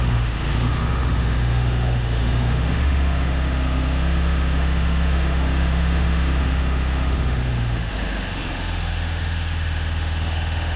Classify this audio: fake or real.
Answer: fake